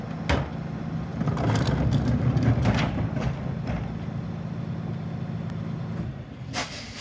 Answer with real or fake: real